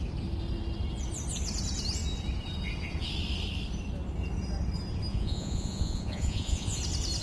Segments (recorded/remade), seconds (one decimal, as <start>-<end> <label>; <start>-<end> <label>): 0.0-5.1 recorded; 5.1-6.8 remade; 6.8-7.2 recorded